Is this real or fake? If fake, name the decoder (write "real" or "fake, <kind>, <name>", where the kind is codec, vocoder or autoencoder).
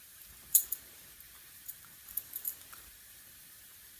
fake, vocoder, BigVGAN v2